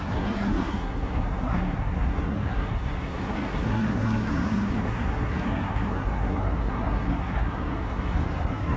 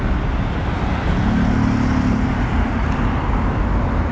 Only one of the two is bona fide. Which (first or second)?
second